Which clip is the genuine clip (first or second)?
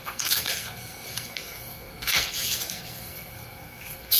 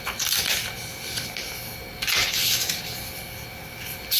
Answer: second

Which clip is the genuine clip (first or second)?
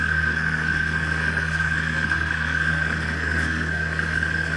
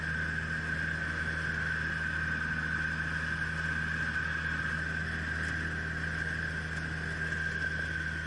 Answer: second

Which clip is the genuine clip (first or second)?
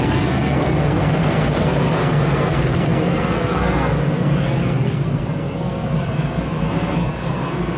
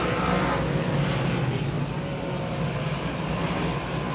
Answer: second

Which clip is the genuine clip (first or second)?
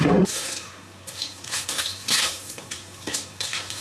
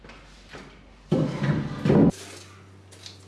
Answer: second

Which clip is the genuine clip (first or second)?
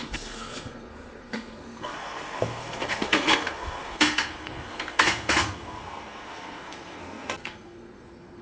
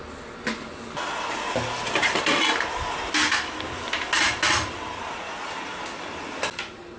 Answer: second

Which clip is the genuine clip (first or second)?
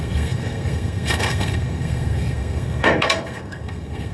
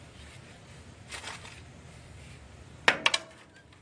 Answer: second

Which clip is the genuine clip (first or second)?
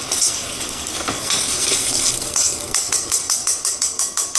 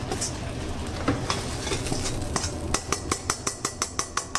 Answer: second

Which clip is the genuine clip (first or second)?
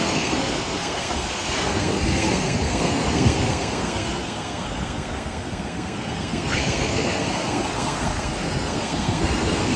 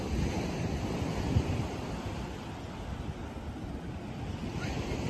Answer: second